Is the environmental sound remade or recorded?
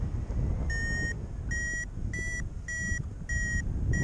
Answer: recorded